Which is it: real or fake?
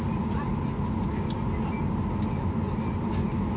real